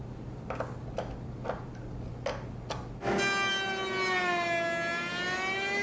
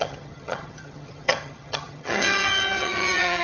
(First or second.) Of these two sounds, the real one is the first